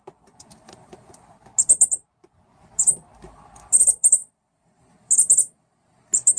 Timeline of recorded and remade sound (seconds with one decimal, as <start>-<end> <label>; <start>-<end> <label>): 0.0-1.5 remade; 1.5-2.2 recorded; 2.2-6.4 remade